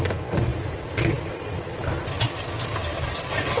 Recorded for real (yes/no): no